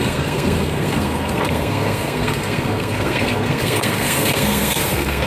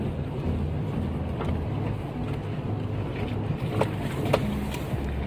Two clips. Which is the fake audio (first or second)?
first